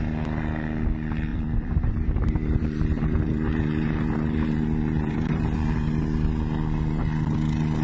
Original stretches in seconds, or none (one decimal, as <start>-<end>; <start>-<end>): 0.0-1.3; 6.0-7.8